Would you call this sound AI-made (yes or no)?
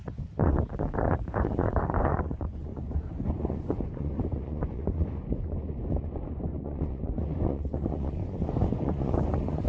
yes